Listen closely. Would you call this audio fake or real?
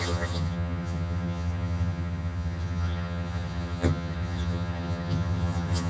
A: fake